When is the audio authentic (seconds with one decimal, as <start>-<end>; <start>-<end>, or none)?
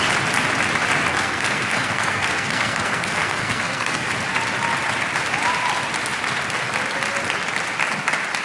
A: 0.0-1.1; 4.1-8.4